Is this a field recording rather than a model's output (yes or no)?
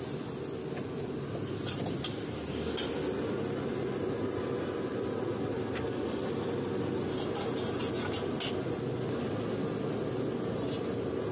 yes